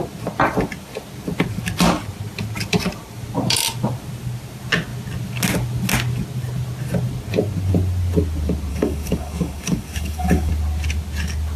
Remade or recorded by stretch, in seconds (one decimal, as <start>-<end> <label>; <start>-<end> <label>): 0.0-8.7 recorded; 8.7-10.5 remade; 10.5-11.6 recorded